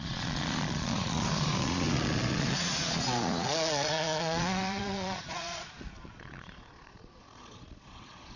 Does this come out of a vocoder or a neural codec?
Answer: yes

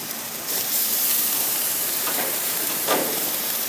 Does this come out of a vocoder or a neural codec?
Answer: yes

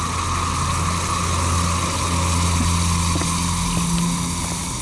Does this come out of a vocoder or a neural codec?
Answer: no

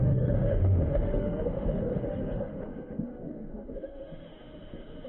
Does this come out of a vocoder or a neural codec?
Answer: yes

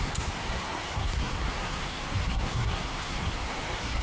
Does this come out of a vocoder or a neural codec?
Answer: yes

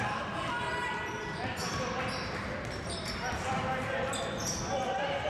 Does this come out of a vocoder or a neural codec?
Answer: no